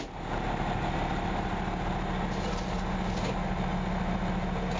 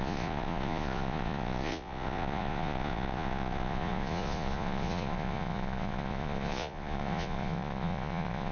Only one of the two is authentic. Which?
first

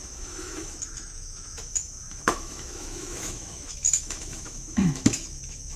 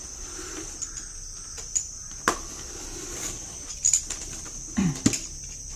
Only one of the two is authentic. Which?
second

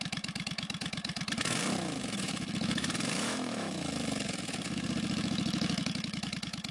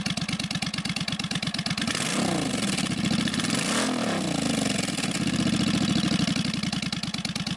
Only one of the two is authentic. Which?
second